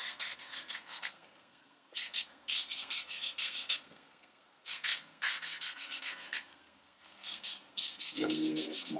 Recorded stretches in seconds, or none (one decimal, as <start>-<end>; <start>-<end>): none